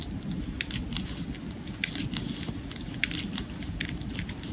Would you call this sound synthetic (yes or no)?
no